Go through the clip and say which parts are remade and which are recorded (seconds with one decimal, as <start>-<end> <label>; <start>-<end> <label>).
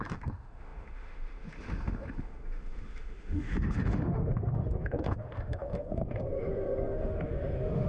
0.0-7.9 remade